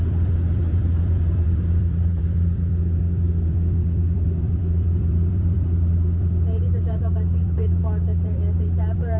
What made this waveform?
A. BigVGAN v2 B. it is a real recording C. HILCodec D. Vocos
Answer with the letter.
A